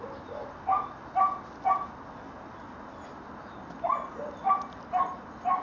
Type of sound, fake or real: real